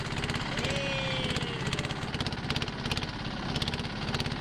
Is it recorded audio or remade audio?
recorded